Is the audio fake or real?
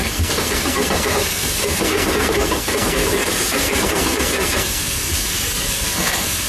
fake